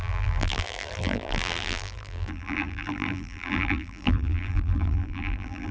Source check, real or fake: fake